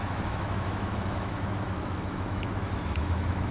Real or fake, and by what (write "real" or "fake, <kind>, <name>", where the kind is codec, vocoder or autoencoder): fake, autoencoder, DAC-VAE